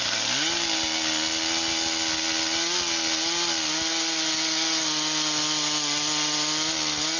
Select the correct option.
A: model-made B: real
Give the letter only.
B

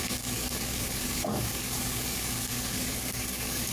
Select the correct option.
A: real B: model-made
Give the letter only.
B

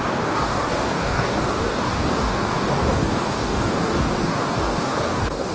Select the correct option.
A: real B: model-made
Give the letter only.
B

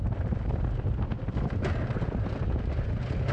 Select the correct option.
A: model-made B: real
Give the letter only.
B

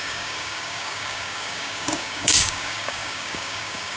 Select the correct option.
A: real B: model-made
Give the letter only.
B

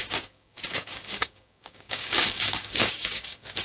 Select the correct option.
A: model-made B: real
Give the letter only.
A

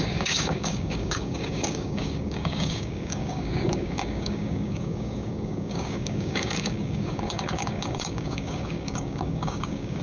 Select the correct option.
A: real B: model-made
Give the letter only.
B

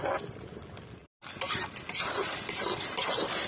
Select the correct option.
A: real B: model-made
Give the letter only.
A